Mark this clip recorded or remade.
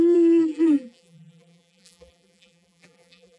remade